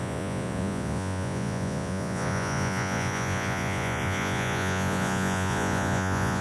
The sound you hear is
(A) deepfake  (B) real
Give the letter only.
A